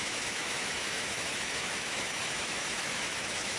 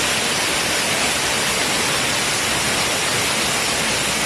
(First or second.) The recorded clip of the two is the second